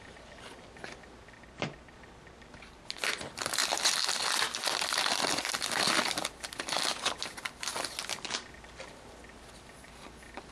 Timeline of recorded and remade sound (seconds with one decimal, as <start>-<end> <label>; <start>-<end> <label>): 0.0-10.5 recorded